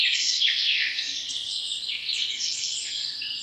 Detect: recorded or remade remade